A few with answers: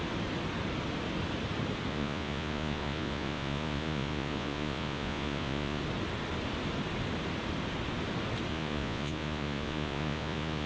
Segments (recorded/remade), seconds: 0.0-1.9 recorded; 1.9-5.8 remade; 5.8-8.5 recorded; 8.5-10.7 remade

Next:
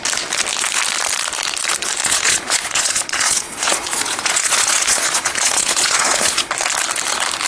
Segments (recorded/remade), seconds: 0.0-2.0 recorded; 2.0-6.5 remade; 6.5-7.5 recorded

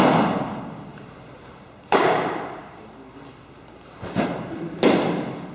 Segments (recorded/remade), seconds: 0.0-0.9 recorded; 0.9-2.6 remade; 2.6-5.5 recorded

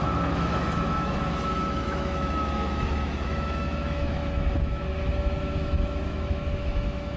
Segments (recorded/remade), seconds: 0.0-7.2 remade

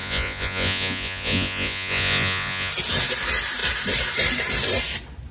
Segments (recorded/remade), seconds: 0.0-2.7 remade; 2.7-5.3 recorded

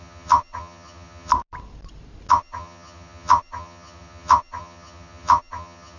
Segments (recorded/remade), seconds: 0.0-1.3 remade; 1.3-2.3 recorded; 2.3-6.0 remade

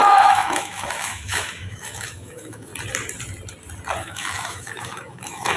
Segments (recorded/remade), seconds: 0.0-2.7 remade; 2.7-4.0 recorded; 4.0-5.6 remade